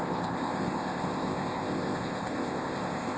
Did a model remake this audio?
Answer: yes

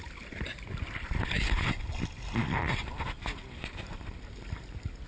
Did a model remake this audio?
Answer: no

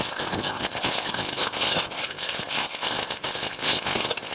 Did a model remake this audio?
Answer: yes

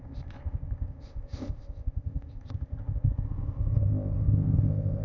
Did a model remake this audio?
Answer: yes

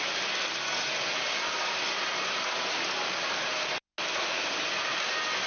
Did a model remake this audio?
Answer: no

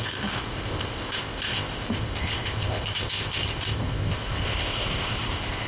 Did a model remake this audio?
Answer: yes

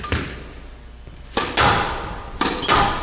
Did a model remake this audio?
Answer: no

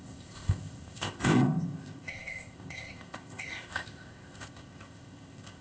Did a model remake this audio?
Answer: yes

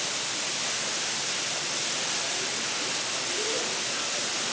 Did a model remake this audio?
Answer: no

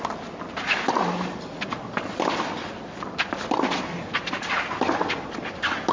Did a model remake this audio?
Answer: no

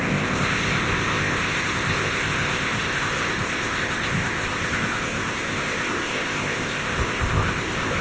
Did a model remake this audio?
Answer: yes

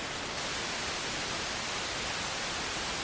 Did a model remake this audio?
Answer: no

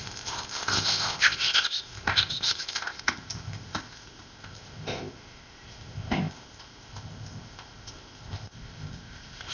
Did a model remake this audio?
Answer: yes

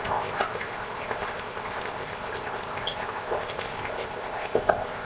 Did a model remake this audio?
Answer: yes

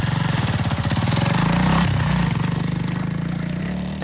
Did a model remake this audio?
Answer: no